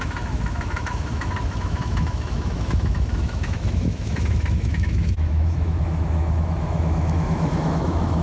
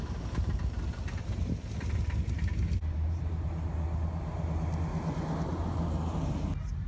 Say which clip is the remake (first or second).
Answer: first